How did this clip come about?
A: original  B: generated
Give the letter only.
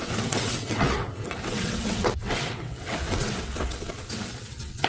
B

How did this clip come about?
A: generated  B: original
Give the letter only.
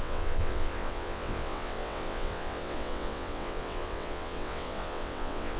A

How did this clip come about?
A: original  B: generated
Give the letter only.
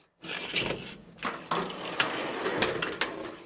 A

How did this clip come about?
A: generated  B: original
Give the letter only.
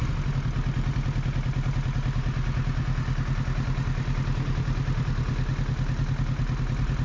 B